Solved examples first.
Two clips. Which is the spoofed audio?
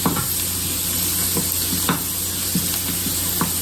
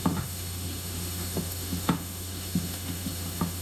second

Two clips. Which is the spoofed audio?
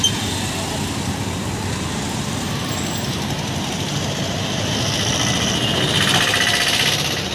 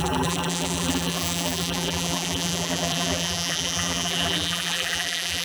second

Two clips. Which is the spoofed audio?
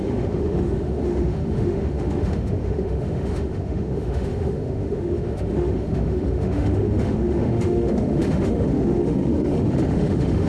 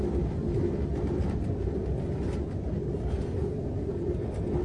first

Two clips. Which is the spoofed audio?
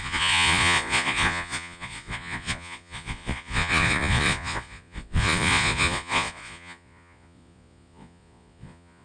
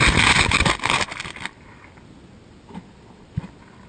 first